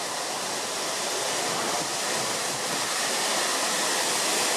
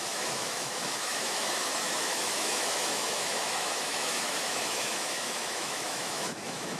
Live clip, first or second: first